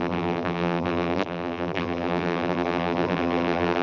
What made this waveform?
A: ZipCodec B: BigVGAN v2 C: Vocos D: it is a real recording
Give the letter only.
B